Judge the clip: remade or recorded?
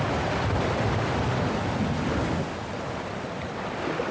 recorded